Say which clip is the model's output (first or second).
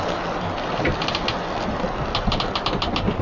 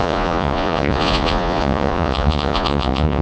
second